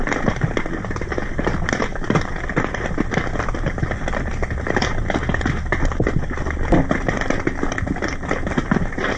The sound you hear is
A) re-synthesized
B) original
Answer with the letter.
B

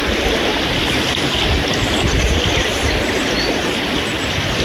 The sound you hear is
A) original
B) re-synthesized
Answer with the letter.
A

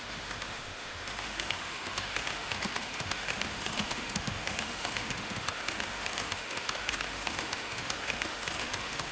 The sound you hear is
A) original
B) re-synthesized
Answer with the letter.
B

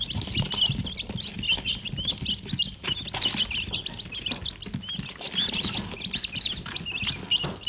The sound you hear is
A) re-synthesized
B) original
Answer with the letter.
B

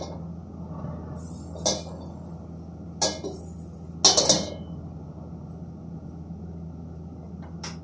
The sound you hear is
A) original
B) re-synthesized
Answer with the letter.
A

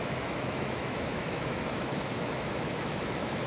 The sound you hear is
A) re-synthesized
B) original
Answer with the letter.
A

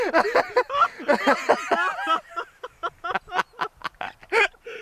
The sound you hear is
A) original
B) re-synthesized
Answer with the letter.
A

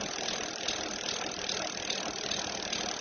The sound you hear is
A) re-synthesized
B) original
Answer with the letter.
B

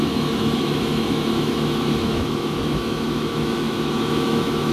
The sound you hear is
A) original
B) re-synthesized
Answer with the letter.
B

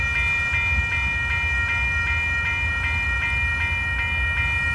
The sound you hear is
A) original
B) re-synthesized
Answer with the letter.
A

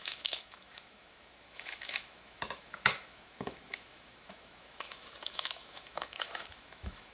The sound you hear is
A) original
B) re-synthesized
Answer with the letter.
B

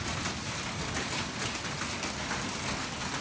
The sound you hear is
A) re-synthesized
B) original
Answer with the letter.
B